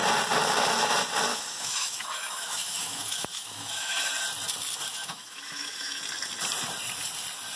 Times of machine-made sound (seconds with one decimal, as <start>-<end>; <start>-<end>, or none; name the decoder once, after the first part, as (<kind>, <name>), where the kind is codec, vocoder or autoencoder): 1.3-4.1 (autoencoder, DAC-VAE); 4.9-6.0